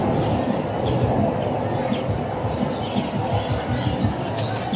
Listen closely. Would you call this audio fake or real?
real